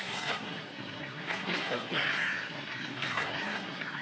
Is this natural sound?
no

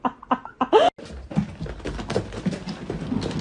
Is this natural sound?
yes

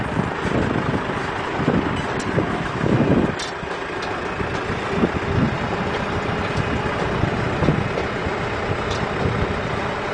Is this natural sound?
no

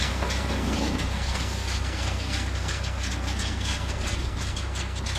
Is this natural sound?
no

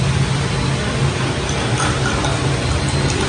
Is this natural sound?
yes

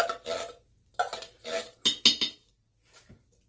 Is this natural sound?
yes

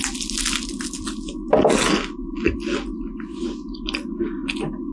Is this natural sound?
yes